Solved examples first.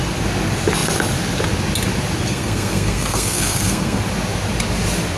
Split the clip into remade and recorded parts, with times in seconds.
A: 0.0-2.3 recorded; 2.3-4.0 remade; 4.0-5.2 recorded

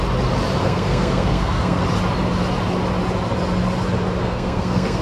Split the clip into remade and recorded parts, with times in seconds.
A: 0.0-0.6 recorded; 0.6-1.8 remade; 1.8-4.2 recorded; 4.2-5.0 remade

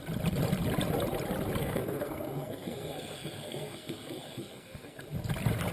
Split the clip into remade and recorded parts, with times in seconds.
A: 0.0-1.6 recorded; 1.6-5.0 remade; 5.0-5.7 recorded

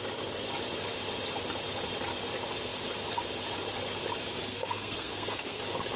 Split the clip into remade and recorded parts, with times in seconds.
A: 0.0-4.5 recorded; 4.5-5.6 remade; 5.6-6.0 recorded

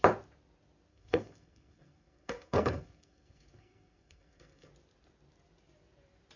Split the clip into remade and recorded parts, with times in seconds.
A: 0.0-0.9 recorded; 0.9-4.7 remade; 4.7-6.4 recorded

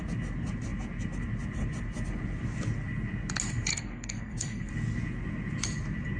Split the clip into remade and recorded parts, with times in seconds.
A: 0.0-3.7 recorded; 3.7-4.7 remade; 4.7-6.2 recorded